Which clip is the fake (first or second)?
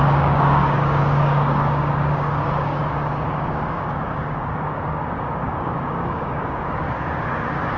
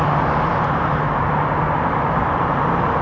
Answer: first